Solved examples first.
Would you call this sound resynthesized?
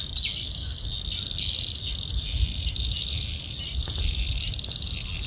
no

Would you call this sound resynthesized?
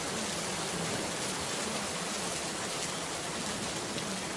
no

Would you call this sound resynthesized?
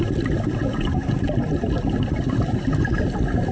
no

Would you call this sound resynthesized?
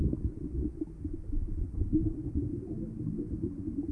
no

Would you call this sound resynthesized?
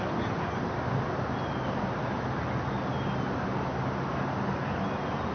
no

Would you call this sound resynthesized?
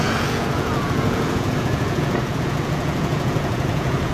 yes